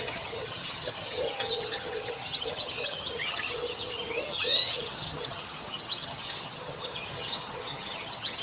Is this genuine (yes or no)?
no